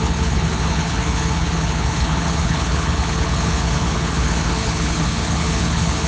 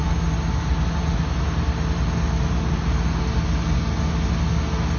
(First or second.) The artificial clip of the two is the first